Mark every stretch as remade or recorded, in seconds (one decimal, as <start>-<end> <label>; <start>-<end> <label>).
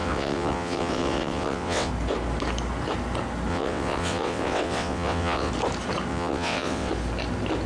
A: 0.0-1.9 remade; 1.9-3.5 recorded; 3.5-5.5 remade; 5.5-6.1 recorded; 6.1-6.9 remade; 6.9-7.7 recorded